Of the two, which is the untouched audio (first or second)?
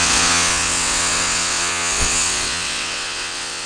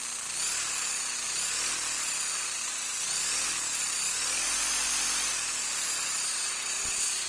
second